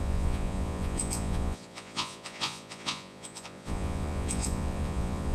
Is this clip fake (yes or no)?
yes